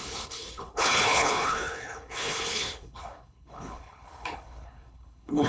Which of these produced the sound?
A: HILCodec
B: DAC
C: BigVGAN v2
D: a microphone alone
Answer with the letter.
A